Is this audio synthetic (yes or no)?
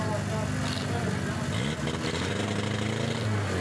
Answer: no